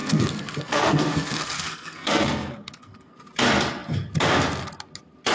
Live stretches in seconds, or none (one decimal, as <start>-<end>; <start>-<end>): 3.2-5.3